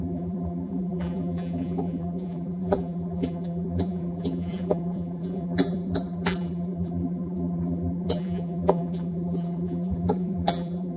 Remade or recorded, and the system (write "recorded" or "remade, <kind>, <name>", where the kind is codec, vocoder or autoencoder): remade, vocoder, BigVGAN v2